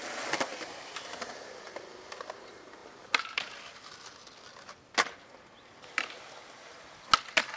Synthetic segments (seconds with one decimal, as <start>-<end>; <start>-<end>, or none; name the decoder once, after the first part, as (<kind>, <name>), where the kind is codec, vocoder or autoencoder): 0.5-1.3 (vocoder, BigVGAN v2)